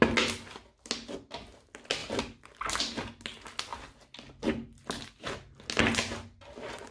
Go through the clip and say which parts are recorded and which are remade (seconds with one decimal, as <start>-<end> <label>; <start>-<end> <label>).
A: 0.0-6.9 recorded